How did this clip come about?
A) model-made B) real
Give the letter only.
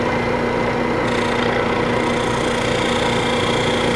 B